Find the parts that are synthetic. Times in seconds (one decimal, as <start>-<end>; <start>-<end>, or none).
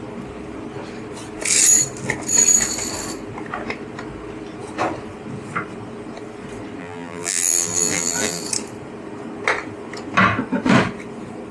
6.8-8.4